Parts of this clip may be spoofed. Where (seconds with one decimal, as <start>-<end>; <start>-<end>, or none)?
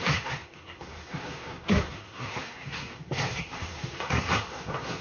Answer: 0.0-5.0